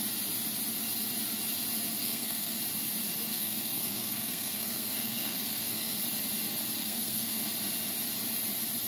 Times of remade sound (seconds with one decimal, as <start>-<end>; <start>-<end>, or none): 2.0-2.6; 3.3-6.0; 6.8-7.4